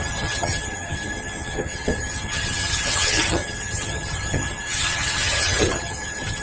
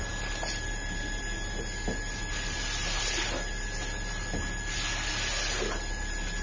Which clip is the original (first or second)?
second